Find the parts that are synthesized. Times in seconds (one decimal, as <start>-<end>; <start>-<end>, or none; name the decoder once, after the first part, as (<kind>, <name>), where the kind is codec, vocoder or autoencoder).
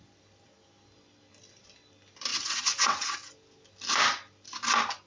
2.3-3.3 (vocoder, WaveNeXt)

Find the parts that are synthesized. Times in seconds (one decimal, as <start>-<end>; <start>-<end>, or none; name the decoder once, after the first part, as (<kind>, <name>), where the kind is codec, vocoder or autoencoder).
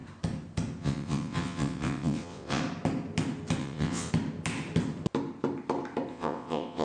0.8-2.6 (vocoder, WaveNeXt); 3.6-4.1; 6.1-6.8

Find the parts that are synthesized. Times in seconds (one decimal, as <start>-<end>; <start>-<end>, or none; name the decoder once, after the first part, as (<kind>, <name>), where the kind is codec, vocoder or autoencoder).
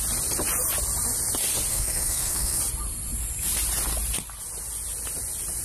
1.7-2.6 (codec, SNAC)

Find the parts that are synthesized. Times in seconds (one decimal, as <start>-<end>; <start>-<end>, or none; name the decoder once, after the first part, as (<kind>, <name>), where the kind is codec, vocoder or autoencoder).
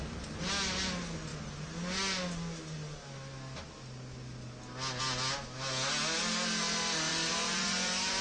7.1-8.2 (vocoder, Vocos)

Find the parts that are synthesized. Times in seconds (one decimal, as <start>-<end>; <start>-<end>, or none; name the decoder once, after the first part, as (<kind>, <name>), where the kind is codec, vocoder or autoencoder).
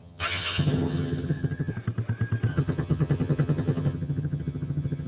0.0-1.7 (vocoder, HiFi-GAN); 2.5-5.1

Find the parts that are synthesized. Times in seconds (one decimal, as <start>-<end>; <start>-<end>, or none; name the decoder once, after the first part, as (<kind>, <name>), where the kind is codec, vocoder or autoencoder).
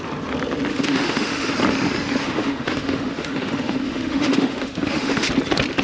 0.7-1.5 (autoencoder, DAC-VAE); 2.2-5.3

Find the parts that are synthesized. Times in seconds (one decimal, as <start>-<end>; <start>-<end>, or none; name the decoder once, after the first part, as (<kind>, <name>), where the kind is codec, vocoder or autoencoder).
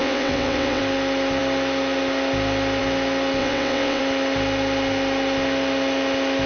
0.0-0.8 (vocoder, WaveNeXt); 3.4-4.0